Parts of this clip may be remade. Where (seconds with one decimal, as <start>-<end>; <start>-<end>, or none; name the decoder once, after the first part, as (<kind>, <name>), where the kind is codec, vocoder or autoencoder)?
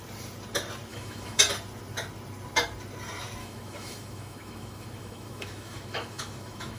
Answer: 0.9-1.4 (autoencoder, DAC-VAE); 3.4-6.8